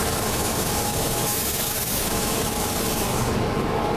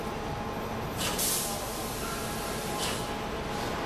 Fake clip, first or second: first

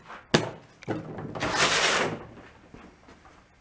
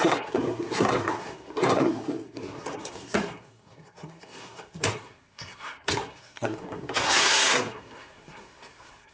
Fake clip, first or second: second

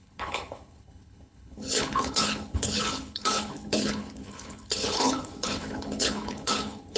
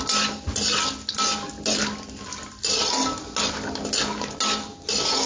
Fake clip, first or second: first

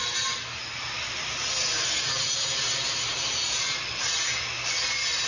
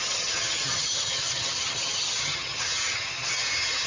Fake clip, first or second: second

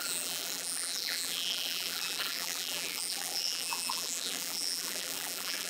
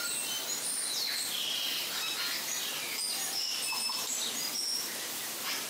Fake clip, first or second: first